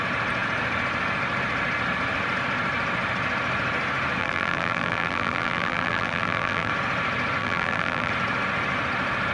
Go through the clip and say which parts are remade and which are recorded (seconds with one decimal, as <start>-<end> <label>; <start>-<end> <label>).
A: 0.0-4.2 recorded; 4.2-6.7 remade; 6.7-7.4 recorded; 7.4-8.1 remade; 8.1-9.3 recorded